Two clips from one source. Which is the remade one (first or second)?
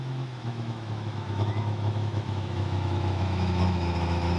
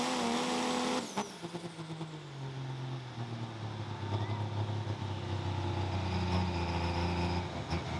first